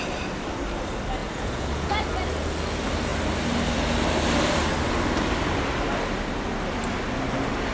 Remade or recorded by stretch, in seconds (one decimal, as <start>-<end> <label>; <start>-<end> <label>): 0.0-1.2 recorded; 1.2-1.9 remade; 1.9-7.7 recorded